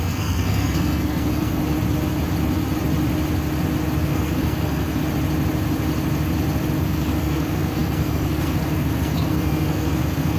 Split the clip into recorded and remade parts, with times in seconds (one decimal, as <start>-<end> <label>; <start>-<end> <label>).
0.0-1.6 remade; 1.6-4.0 recorded; 4.0-5.0 remade; 5.0-6.8 recorded; 6.8-10.4 remade